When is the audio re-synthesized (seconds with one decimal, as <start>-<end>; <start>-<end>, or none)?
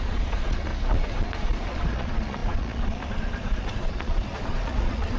0.0-0.7; 1.3-5.2